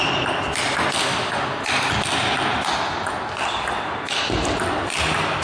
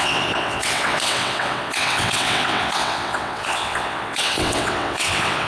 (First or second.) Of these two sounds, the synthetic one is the second